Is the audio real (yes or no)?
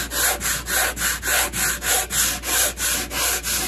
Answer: yes